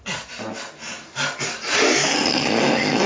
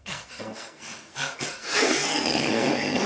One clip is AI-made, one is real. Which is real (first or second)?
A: first